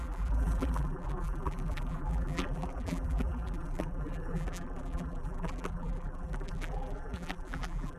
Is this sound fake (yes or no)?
yes